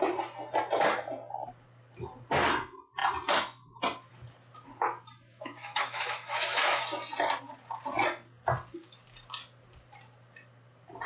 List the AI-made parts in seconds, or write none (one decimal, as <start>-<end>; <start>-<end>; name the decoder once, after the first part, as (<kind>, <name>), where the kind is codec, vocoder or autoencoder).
5.3-6.8 (autoencoder, DAC-VAE)